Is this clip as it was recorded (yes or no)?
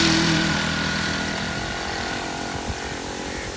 yes